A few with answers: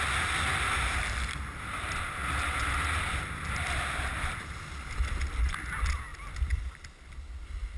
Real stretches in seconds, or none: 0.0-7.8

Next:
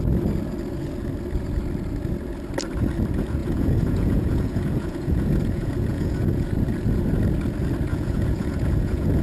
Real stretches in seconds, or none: 0.0-3.4; 6.5-7.9

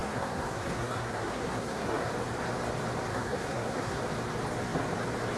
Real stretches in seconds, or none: 2.1-3.1; 4.0-5.4

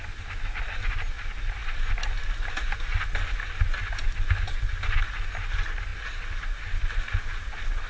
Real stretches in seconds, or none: 0.0-7.9